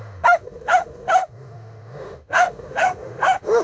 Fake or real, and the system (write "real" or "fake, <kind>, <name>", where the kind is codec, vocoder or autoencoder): fake, autoencoder, DAC-VAE